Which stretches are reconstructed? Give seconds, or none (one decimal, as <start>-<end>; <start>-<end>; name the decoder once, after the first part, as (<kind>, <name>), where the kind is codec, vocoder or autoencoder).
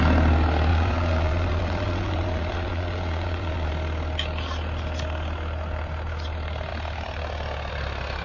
0.7-3.7 (vocoder, Vocos)